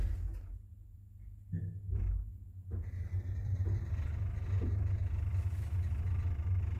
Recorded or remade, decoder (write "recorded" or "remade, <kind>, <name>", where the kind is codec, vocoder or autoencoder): recorded